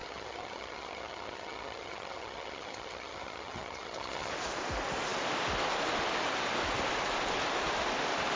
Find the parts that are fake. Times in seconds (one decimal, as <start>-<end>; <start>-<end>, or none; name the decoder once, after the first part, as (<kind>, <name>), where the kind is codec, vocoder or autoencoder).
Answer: 0.0-4.3 (vocoder, HiFi-GAN)